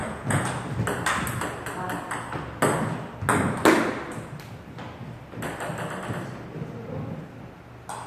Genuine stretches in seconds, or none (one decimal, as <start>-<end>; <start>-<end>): 0.5-8.1

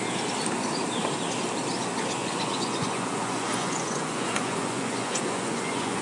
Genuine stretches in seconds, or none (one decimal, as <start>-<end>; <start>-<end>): 0.0-2.2

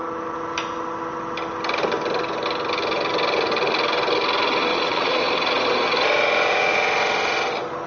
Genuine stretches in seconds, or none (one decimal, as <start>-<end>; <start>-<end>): 0.0-4.7; 5.2-7.9

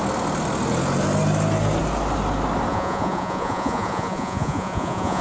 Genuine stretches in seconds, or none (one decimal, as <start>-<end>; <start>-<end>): 0.0-2.7